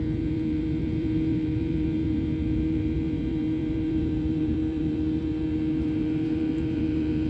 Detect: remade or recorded remade